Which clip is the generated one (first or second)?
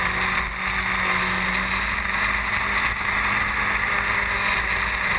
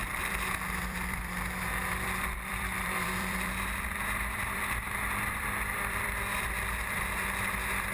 second